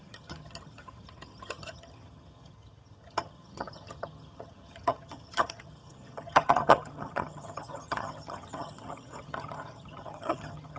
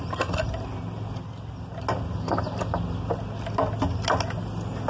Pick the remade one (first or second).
first